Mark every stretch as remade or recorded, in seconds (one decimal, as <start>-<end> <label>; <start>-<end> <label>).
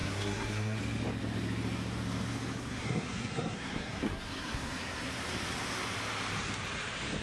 0.0-0.8 remade; 0.8-2.6 recorded; 2.6-5.1 remade; 5.1-7.2 recorded